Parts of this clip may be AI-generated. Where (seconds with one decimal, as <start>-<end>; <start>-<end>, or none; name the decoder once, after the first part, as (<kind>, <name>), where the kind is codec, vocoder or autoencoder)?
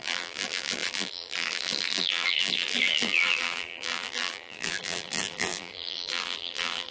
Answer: 0.0-6.9 (vocoder, BigVGAN v2)